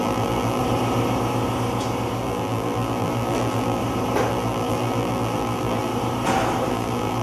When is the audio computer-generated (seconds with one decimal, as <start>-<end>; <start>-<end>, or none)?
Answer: 0.0-0.6; 2.2-3.8; 4.3-5.9; 6.7-7.2